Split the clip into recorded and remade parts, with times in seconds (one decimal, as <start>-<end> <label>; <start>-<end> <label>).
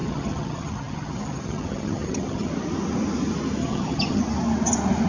0.0-2.5 remade; 2.5-3.6 recorded; 3.6-4.2 remade; 4.2-5.1 recorded